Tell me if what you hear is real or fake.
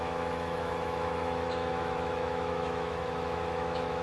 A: fake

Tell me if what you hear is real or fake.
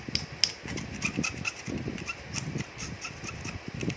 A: real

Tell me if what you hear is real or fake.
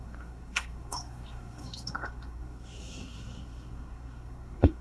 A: fake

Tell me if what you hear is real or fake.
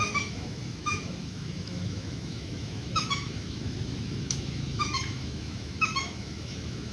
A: fake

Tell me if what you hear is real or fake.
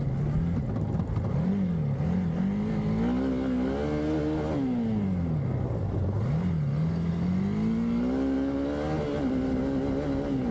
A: real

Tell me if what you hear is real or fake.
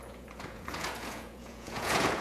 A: fake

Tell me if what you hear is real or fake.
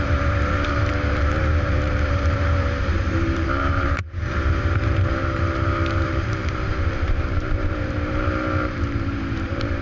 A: fake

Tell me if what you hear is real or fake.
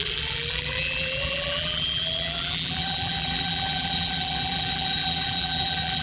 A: fake